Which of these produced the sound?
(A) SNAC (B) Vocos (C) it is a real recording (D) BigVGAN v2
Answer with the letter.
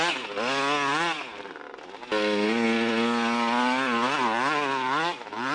C